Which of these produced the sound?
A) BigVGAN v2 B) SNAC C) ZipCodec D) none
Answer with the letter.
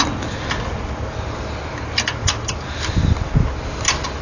D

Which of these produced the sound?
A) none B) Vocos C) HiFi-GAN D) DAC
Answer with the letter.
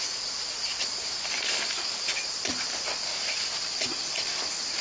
A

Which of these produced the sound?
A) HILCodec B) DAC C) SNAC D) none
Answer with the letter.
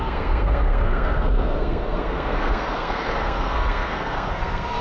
C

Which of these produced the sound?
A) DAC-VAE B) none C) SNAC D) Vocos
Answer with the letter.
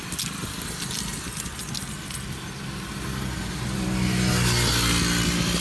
B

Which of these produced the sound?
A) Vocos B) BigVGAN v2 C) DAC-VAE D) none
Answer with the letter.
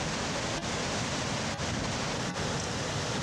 D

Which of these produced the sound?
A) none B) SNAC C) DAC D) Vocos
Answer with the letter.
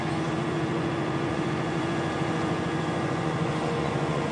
D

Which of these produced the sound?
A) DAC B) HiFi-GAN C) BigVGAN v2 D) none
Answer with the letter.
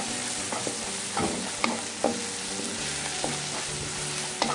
D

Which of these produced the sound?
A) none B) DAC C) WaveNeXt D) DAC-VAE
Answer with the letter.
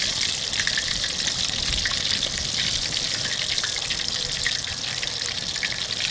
A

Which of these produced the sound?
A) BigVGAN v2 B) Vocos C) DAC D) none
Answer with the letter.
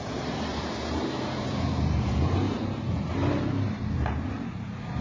A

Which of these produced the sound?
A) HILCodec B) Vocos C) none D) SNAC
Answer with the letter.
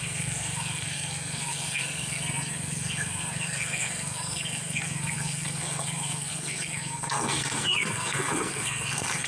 D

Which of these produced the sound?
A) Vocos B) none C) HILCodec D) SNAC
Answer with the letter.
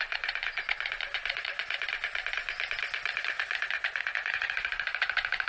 A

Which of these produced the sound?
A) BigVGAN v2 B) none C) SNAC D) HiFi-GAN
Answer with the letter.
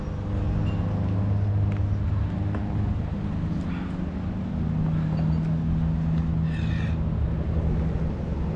B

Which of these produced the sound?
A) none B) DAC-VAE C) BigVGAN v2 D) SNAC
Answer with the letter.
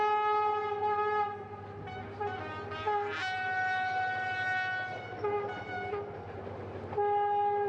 A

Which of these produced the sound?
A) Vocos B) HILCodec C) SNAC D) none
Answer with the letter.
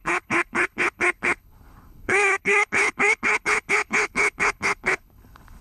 B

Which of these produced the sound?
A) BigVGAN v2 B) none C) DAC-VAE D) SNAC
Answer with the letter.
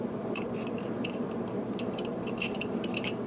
A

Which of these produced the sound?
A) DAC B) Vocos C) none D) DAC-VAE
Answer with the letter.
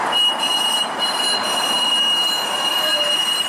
C